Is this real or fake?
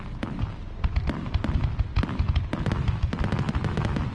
real